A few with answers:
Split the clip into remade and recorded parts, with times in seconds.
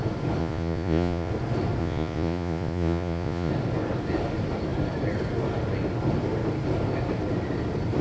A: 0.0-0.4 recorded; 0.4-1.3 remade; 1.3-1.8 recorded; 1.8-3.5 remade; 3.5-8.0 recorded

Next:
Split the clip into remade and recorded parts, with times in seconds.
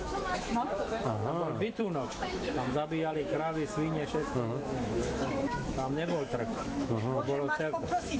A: 0.0-8.2 remade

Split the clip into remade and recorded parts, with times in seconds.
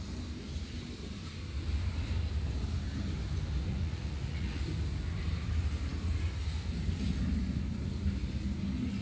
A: 0.0-3.7 recorded; 3.7-4.6 remade; 4.6-9.0 recorded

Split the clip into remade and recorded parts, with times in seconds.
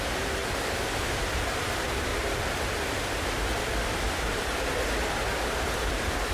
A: 0.0-2.1 recorded; 2.1-4.7 remade; 4.7-6.3 recorded